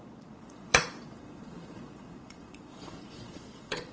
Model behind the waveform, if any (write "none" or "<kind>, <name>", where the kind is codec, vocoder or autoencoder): vocoder, Vocos